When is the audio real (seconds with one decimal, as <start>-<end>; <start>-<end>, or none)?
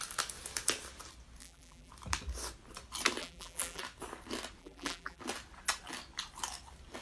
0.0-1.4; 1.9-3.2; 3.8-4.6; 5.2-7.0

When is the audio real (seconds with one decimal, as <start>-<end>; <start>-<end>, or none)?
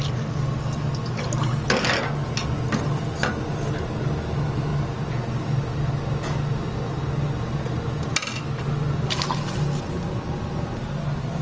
0.0-11.4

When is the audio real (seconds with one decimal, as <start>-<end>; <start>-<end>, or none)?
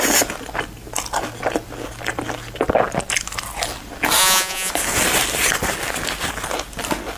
0.0-4.2; 4.7-7.2